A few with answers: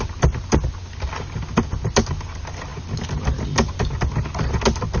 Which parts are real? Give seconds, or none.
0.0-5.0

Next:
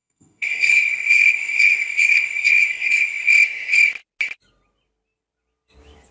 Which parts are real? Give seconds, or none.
3.3-6.1

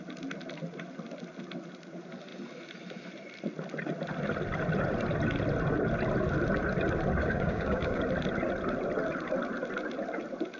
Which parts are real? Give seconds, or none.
0.0-7.2; 8.0-10.6

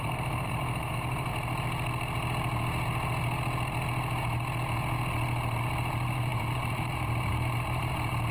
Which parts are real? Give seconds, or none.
1.3-5.6

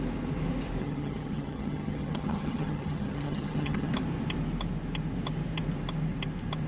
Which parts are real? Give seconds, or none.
0.0-0.8; 3.9-6.7

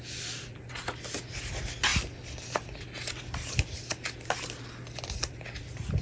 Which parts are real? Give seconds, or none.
0.0-6.0

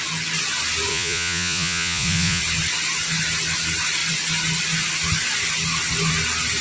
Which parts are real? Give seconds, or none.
0.0-0.9; 2.4-6.6